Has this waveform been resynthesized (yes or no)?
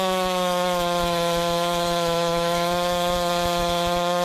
yes